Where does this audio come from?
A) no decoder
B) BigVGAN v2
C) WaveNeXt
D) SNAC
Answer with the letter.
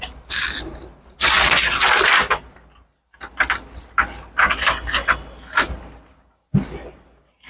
A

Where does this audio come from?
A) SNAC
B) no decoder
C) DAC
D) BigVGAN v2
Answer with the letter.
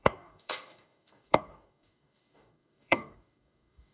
C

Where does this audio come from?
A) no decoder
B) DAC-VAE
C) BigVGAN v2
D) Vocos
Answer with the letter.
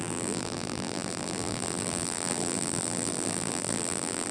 C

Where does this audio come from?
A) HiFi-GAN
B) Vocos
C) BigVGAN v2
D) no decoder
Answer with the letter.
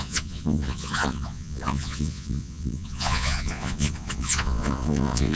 B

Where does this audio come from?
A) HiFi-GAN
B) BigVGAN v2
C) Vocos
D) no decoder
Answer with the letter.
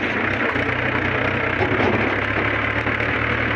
D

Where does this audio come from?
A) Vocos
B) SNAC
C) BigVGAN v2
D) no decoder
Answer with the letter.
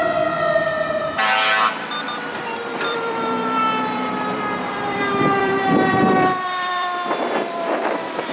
C